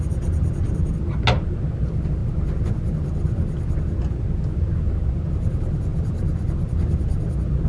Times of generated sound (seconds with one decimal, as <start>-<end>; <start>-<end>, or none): none